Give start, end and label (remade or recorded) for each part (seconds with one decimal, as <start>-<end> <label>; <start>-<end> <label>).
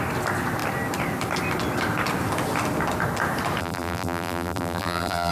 0.0-3.6 recorded; 3.6-5.3 remade